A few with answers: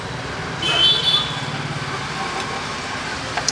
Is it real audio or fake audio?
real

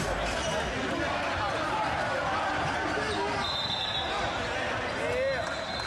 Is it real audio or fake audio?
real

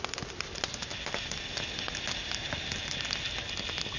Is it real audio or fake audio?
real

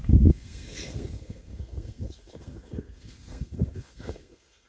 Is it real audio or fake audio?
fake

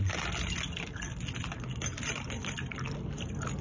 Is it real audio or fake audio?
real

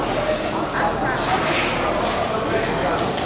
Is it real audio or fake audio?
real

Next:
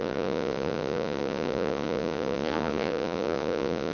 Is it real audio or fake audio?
fake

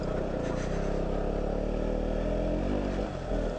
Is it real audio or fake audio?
real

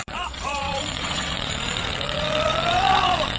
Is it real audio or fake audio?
fake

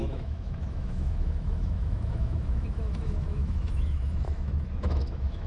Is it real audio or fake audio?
fake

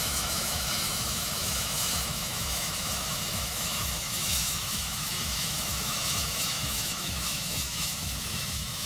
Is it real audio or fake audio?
fake